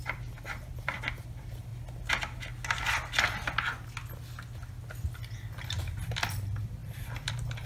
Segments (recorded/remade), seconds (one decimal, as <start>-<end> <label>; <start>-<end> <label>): 0.0-1.7 remade; 1.7-5.8 recorded; 5.8-7.7 remade